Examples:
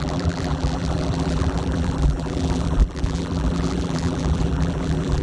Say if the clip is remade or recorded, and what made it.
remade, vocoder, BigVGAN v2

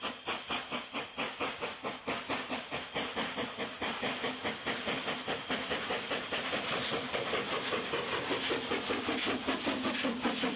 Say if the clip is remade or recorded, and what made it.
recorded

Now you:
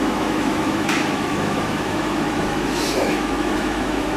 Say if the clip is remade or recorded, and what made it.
remade, autoencoder, DAC-VAE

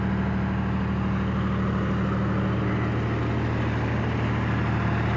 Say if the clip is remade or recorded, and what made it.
recorded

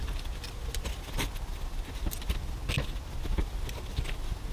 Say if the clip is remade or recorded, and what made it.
recorded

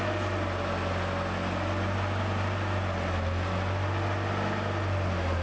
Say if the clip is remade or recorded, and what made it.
recorded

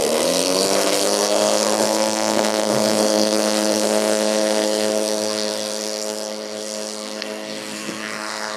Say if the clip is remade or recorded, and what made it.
remade, codec, SNAC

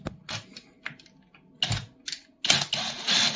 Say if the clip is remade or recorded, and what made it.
recorded